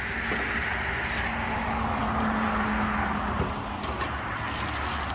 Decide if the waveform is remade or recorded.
recorded